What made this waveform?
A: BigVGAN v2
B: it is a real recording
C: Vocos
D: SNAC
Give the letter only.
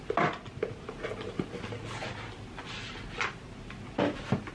B